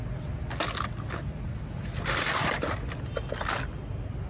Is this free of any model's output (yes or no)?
yes